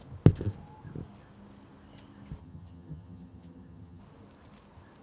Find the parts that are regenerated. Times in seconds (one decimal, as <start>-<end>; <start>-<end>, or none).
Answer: 2.4-4.0